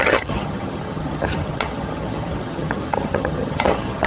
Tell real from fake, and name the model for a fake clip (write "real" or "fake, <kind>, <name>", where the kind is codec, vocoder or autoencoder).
fake, vocoder, HiFi-GAN